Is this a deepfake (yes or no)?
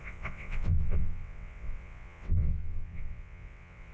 yes